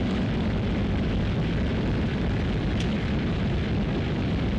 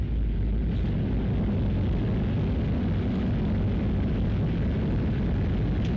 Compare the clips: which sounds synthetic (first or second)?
first